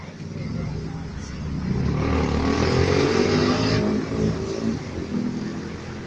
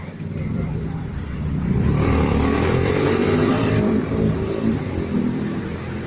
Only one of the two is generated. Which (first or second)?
second